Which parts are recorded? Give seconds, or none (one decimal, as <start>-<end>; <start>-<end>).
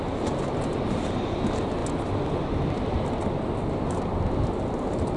0.0-5.2